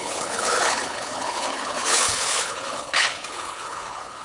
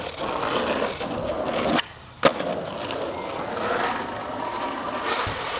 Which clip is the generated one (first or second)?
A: first